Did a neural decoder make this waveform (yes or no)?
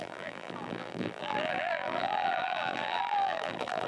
yes